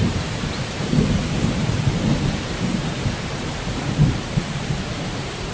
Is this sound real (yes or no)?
no